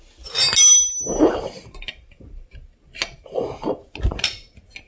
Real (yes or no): yes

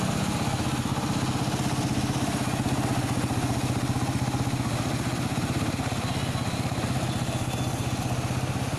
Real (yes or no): yes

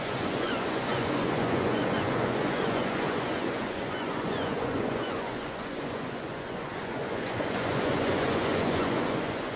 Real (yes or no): no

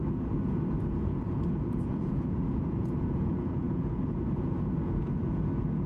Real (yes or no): no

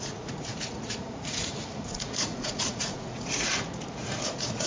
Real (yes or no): no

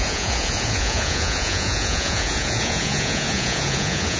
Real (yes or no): no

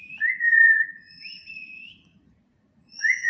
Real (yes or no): no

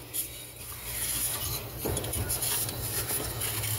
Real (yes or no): yes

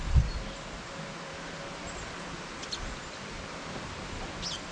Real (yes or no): yes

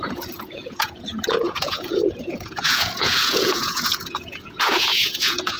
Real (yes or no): no